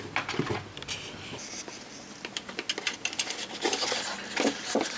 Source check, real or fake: real